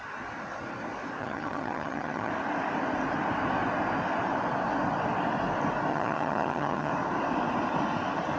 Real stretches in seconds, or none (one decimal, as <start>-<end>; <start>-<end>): 0.0-1.2; 2.3-5.9; 6.9-8.4